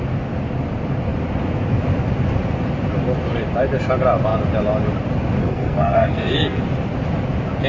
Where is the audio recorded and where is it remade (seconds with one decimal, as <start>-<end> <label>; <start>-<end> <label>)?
0.0-5.4 recorded; 5.4-6.6 remade; 6.6-7.7 recorded